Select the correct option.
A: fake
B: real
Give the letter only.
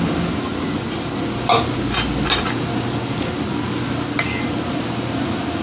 B